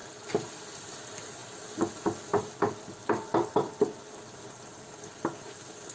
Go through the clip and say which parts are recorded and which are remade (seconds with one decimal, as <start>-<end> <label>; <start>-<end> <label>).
0.0-5.9 recorded